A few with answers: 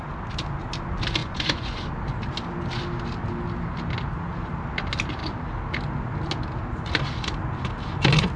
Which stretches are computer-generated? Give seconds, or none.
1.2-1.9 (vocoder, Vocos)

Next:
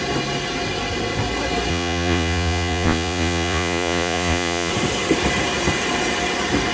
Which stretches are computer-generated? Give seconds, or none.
1.7-4.7 (vocoder, Vocos)

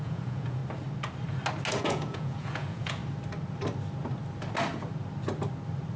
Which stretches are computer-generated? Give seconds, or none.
0.0-0.6 (vocoder, Vocos); 1.8-3.0

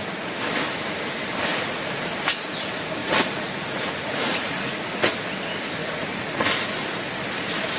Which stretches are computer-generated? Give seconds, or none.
1.5-2.1 (vocoder, Vocos); 3.0-5.1; 5.8-6.5